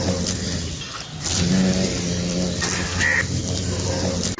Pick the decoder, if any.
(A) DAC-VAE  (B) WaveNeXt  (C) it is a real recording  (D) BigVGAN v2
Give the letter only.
C